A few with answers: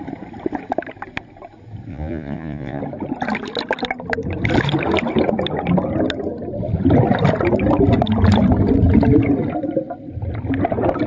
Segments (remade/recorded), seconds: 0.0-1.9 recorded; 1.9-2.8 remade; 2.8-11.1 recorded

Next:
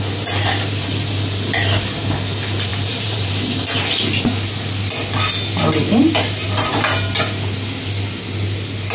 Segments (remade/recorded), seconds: 0.0-2.7 recorded; 2.7-3.3 remade; 3.3-8.9 recorded

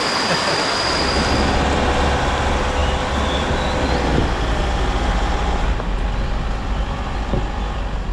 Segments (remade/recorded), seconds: 0.0-8.1 recorded

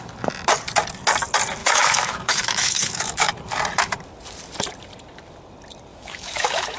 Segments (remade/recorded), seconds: 0.0-1.6 recorded; 1.6-3.3 remade; 3.3-5.9 recorded; 5.9-6.8 remade

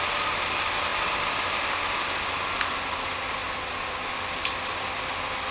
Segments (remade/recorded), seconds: 0.0-0.9 recorded; 0.9-2.6 remade; 2.6-5.5 recorded

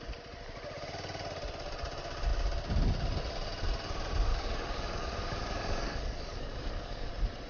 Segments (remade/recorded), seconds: 0.0-4.3 recorded; 4.3-7.1 remade; 7.1-7.5 recorded

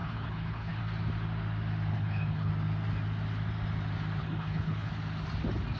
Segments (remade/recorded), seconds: 0.0-0.8 remade; 0.8-1.9 recorded; 1.9-2.5 remade; 2.5-4.2 recorded; 4.2-4.9 remade; 4.9-5.8 recorded